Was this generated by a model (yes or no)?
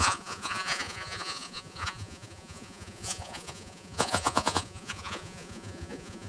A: yes